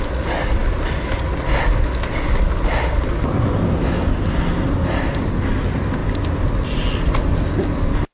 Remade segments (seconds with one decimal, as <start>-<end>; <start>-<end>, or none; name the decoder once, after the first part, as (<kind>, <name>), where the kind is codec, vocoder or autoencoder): none

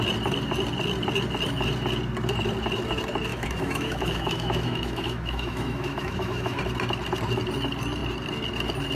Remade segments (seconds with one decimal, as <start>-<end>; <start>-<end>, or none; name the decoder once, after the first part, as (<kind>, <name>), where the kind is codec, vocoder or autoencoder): 3.3-6.6 (autoencoder, DAC-VAE)

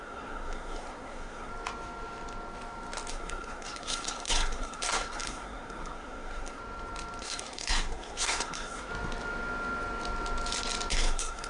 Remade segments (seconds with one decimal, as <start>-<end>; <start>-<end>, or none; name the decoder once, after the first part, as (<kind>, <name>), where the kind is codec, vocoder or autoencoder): 0.0-1.5 (codec, SNAC); 3.1-6.6; 7.2-8.9; 10.9-11.5

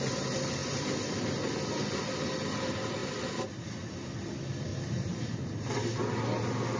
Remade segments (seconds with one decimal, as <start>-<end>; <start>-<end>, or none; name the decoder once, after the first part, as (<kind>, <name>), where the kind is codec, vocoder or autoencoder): 4.7-5.7 (vocoder, BigVGAN v2)

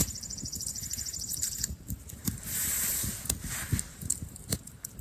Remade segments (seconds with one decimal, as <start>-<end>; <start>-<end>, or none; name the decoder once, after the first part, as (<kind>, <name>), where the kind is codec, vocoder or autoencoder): 0.0-3.0 (vocoder, BigVGAN v2); 3.9-5.0